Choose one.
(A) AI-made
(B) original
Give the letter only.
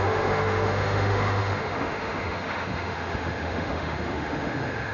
A